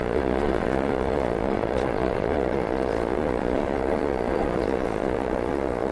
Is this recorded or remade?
remade